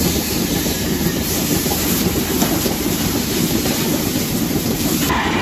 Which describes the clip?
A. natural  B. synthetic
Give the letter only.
B